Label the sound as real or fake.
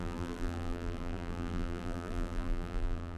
fake